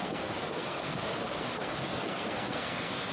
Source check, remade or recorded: remade